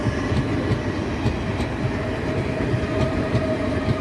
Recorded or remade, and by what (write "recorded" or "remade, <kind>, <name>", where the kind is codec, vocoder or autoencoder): recorded